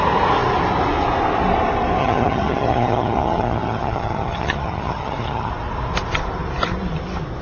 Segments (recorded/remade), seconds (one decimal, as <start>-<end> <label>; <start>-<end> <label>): 0.0-2.0 recorded; 2.0-5.5 remade; 5.5-7.4 recorded